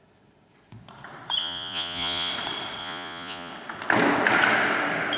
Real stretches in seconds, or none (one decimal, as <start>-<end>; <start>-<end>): 0.0-1.4; 2.3-2.8; 3.5-5.2